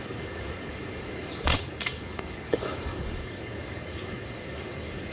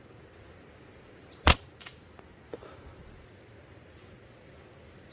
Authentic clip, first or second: second